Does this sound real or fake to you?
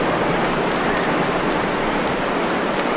real